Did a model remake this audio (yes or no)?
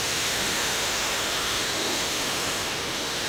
yes